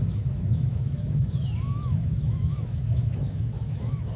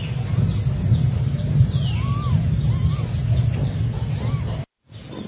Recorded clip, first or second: second